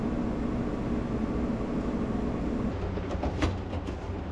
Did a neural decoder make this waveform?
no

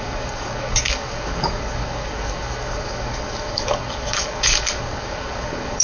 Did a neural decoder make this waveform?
yes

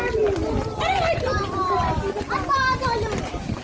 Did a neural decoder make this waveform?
no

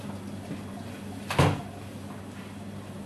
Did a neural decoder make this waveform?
no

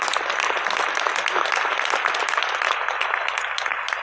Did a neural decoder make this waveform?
yes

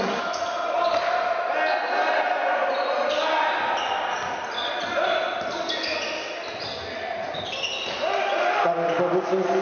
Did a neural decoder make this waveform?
no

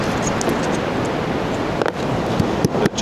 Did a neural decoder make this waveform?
no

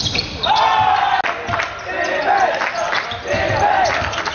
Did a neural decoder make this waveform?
no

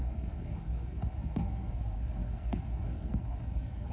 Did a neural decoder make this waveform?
yes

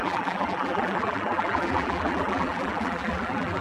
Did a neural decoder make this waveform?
yes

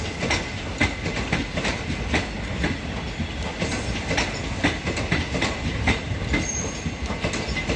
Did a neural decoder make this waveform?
no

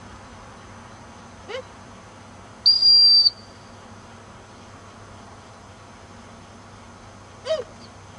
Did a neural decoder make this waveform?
no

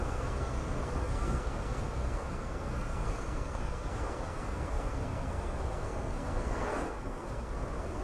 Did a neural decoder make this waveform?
yes